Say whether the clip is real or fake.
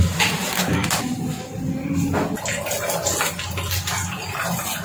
real